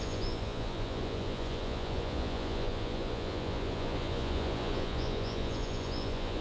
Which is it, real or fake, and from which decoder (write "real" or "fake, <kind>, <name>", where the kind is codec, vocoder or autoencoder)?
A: fake, vocoder, Vocos